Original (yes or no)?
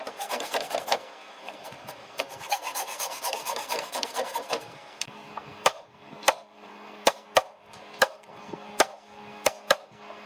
no